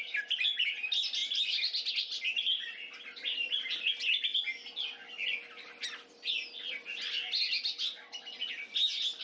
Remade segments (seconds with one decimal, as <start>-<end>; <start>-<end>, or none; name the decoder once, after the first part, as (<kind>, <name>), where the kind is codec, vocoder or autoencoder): none